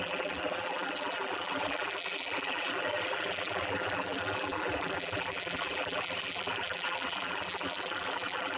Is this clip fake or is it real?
fake